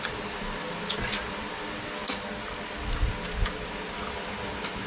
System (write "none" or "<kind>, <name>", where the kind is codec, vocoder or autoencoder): none